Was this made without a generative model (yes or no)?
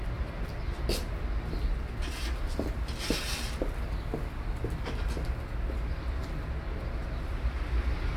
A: yes